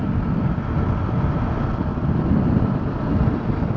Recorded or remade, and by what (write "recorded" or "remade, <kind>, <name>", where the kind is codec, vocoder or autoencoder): recorded